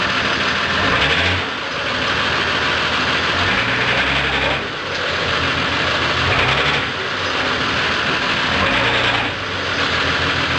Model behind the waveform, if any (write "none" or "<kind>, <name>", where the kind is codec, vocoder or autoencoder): none